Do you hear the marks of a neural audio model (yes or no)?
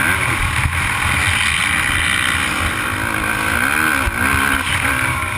no